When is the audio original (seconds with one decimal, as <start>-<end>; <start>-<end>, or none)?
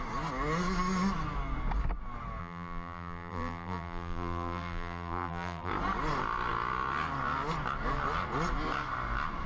0.0-2.4; 5.7-9.5